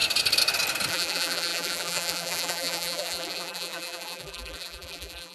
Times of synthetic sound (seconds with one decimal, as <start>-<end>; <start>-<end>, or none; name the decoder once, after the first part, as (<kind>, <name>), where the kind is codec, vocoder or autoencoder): 0.9-5.3 (vocoder, BigVGAN v2)